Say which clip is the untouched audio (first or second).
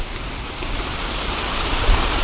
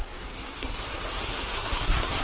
first